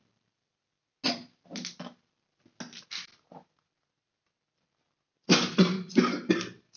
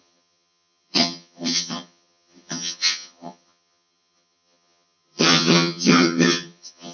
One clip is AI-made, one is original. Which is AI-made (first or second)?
second